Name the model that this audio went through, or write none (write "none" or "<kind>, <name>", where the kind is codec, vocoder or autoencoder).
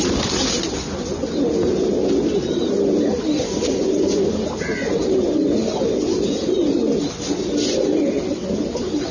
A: none